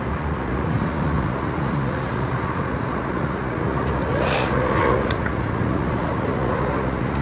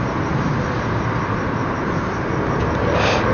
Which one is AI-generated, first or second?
first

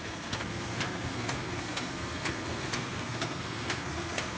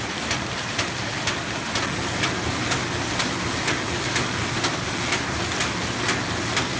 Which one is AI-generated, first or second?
first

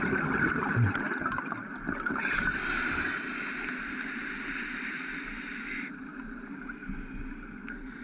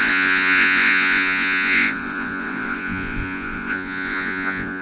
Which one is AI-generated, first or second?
second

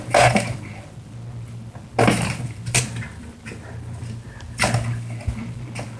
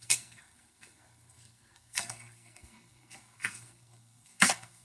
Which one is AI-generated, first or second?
second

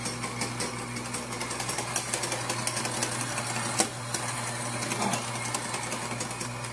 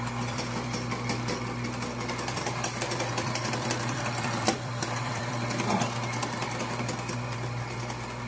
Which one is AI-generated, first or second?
second